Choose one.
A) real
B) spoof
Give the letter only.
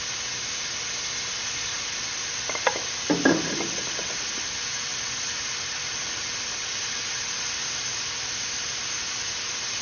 A